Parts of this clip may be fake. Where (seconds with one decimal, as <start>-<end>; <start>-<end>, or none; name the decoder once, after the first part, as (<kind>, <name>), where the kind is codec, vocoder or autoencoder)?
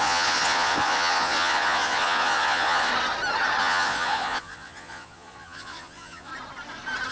0.0-2.9 (vocoder, Vocos); 3.6-6.3